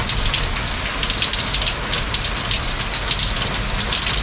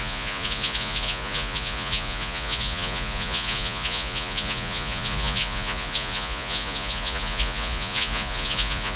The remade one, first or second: second